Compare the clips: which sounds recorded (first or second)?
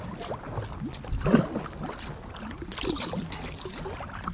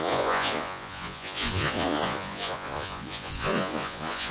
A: first